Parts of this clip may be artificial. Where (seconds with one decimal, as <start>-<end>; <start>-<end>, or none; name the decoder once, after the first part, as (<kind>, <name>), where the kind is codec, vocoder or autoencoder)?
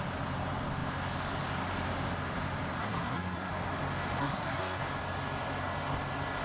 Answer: 2.8-3.5 (codec, SNAC); 4.2-4.8